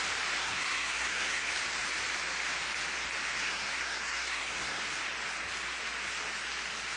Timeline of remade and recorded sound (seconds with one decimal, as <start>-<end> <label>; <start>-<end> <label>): 0.0-0.4 recorded; 0.4-1.5 remade; 1.5-3.4 recorded; 3.4-4.8 remade; 4.8-7.0 recorded